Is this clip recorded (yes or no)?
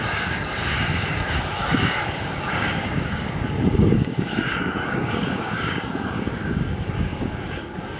no